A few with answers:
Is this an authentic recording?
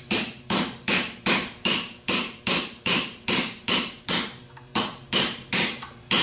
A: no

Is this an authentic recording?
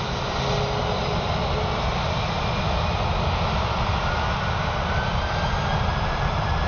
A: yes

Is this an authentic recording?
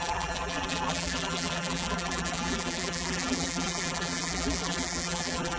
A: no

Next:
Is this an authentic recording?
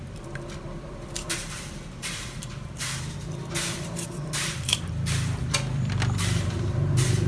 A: no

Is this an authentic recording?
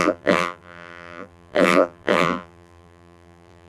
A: no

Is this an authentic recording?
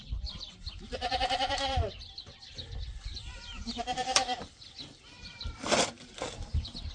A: no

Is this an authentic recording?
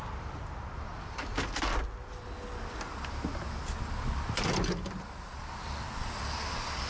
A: yes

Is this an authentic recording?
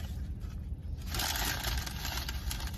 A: yes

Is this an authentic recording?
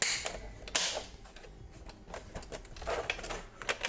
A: yes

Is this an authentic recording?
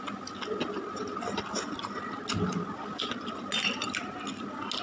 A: yes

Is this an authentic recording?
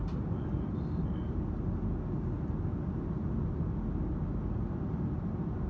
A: yes